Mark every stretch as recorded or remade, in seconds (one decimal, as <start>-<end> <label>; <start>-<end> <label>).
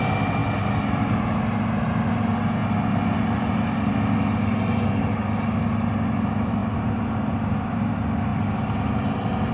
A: 0.0-6.6 recorded; 6.6-7.9 remade; 7.9-9.5 recorded